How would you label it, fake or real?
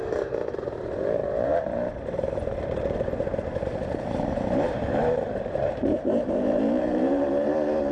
fake